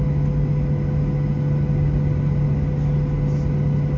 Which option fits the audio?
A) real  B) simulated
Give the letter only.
A